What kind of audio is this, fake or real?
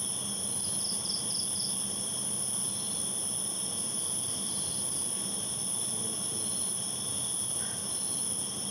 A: real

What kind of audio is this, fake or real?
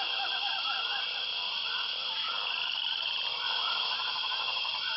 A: real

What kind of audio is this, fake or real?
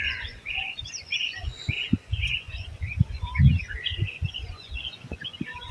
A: fake